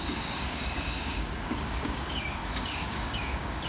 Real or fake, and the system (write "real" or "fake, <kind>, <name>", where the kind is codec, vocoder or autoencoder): fake, codec, DAC